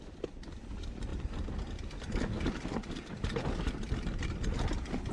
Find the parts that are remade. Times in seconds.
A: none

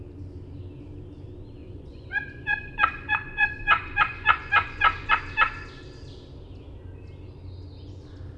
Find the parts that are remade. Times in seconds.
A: 1.6-5.1 (vocoder, Vocos)

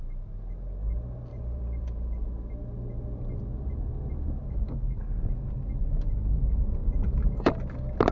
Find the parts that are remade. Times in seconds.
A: 1.3-2.3 (vocoder, BigVGAN v2); 4.4-5.0; 6.8-7.5